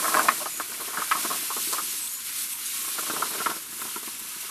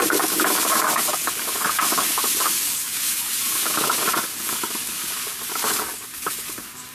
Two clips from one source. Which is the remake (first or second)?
second